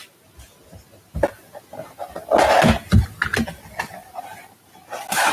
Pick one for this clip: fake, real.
real